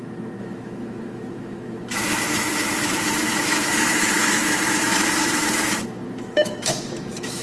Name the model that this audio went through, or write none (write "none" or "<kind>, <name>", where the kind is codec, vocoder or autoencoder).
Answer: autoencoder, DAC-VAE